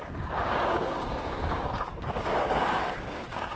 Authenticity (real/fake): fake